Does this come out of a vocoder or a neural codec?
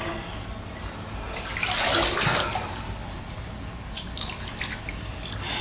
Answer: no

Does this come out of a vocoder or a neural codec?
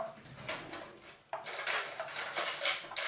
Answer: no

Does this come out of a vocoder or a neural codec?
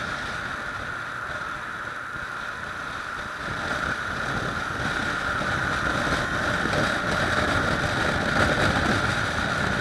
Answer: no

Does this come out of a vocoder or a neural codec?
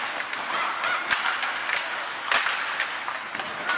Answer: no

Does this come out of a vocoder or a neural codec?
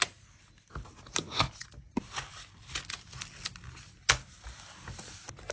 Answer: no